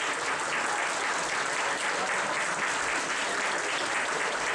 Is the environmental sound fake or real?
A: real